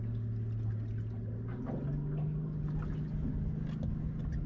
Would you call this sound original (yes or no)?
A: yes